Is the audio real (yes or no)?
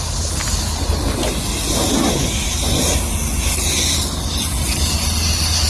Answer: yes